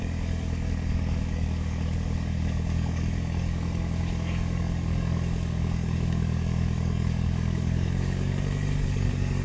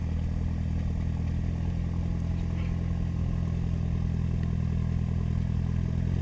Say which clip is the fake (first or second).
first